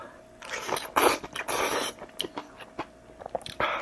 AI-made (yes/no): no